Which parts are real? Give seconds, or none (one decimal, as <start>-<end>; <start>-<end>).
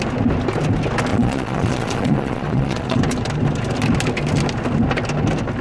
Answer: 0.0-1.1; 3.0-5.6